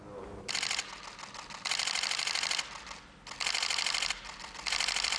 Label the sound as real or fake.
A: real